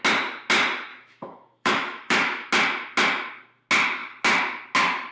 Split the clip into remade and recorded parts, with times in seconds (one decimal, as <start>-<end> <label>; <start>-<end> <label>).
0.0-0.9 recorded; 0.9-2.5 remade; 2.5-5.1 recorded